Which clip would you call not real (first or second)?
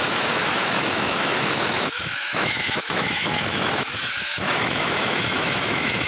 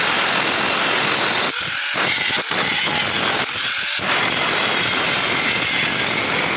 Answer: first